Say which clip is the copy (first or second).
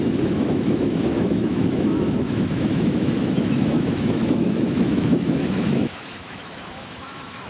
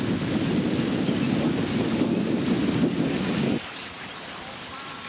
first